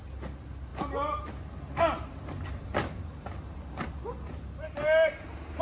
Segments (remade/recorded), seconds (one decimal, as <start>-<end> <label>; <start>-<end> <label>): 0.0-5.6 recorded